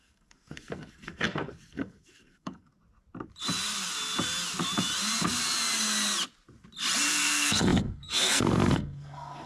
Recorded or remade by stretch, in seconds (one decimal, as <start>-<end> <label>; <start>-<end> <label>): 0.0-2.7 remade; 2.7-7.1 recorded; 7.1-9.5 remade

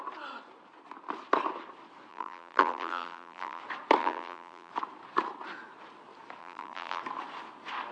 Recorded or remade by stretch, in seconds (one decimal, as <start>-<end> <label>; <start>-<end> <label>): 0.0-2.1 recorded; 2.1-3.6 remade; 3.6-4.0 recorded; 4.0-4.7 remade; 4.7-6.4 recorded; 6.4-7.0 remade; 7.0-7.9 recorded

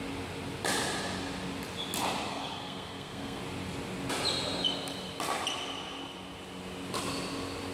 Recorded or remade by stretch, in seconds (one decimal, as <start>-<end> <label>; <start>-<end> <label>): 0.0-2.3 recorded; 2.3-3.4 remade; 3.4-7.7 recorded

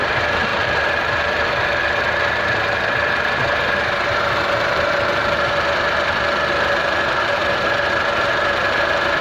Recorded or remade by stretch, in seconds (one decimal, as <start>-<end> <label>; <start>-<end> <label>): 0.0-9.2 recorded